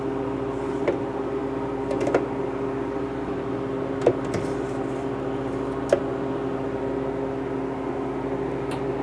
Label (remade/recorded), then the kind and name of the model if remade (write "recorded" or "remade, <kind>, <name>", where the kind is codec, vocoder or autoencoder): recorded